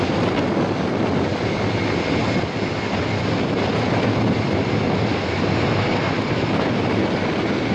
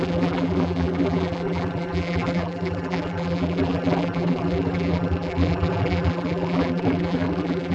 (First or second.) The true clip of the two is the first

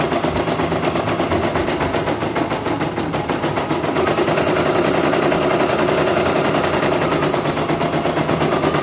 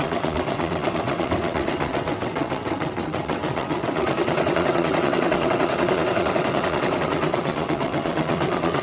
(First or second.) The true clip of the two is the first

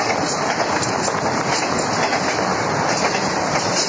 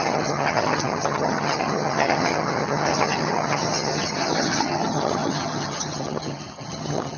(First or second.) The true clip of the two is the first